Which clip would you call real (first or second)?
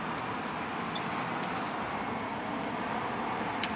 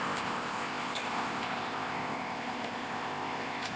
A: first